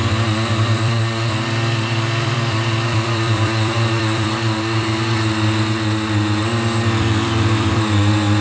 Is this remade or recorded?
remade